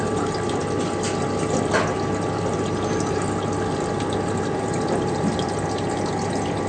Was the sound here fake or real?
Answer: real